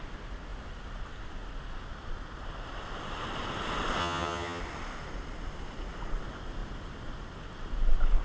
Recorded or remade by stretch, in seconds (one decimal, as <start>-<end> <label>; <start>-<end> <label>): 0.0-4.0 recorded; 4.0-4.6 remade; 4.6-8.2 recorded